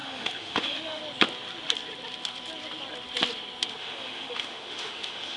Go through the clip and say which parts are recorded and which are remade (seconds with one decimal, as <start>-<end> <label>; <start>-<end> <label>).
0.0-1.0 remade; 1.0-3.8 recorded; 3.8-5.4 remade